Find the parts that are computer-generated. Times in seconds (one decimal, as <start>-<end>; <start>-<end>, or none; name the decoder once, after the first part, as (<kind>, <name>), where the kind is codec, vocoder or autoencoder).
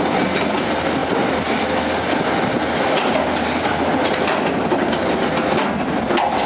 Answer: none